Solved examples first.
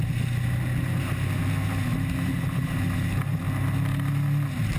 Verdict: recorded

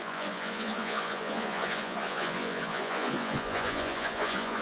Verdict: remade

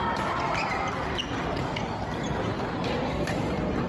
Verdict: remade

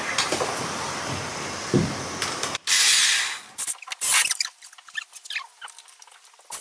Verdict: recorded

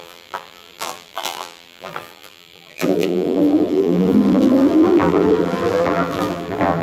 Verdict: remade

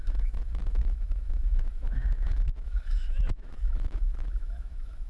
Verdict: remade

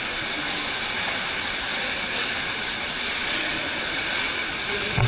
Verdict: recorded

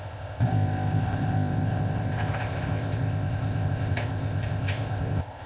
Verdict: remade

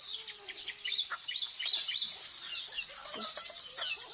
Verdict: recorded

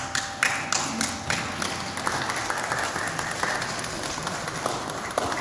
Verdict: recorded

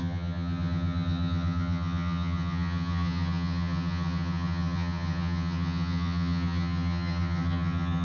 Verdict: remade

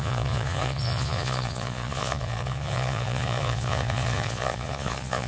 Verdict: remade